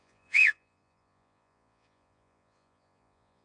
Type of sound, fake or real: fake